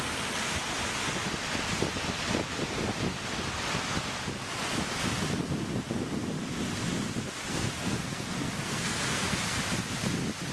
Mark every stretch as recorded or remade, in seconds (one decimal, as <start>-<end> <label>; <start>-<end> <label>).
0.0-7.5 recorded; 7.5-9.6 remade; 9.6-10.5 recorded

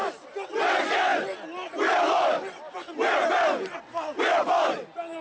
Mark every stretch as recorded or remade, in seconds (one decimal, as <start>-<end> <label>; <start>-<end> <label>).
0.0-5.2 recorded